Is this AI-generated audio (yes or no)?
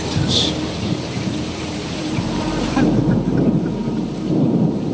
yes